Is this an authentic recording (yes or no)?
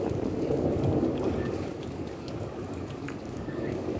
no